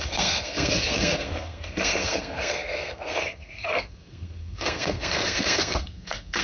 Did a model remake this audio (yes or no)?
yes